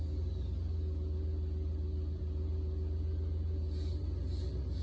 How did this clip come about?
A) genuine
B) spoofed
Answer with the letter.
A